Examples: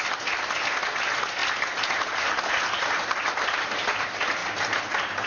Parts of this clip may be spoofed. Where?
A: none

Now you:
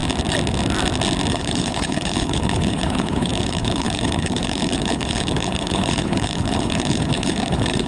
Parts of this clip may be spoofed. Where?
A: 1.3-7.9 (codec, HILCodec)

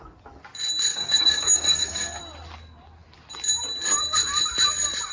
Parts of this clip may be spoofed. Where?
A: 0.9-2.2 (codec, DAC)

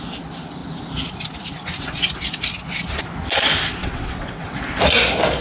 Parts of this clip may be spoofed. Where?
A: 3.8-4.6 (vocoder, WaveNeXt)

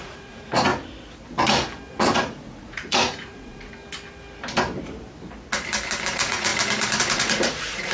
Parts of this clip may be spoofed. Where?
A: 0.0-0.7 (vocoder, Vocos); 1.9-3.7; 6.1-6.5; 7.0-7.9

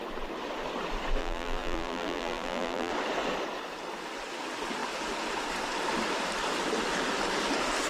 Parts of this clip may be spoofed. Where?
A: 1.2-2.9 (vocoder, BigVGAN v2)

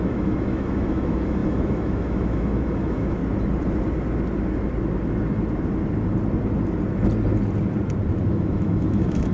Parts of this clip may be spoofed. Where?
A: 0.0-3.2 (autoencoder, DAC-VAE); 8.3-9.3

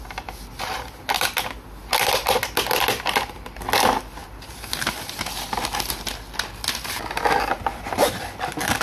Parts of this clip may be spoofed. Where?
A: none